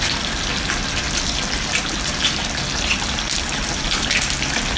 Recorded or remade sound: recorded